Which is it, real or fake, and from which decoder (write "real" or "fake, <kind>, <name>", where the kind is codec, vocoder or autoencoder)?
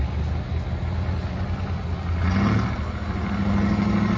real